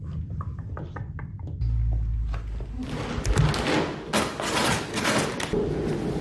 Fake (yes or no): no